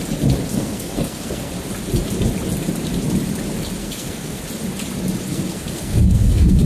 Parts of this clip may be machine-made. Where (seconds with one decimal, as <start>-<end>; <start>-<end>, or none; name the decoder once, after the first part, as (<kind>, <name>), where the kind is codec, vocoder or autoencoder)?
0.5-1.5 (codec, SNAC); 3.8-4.4; 5.3-6.7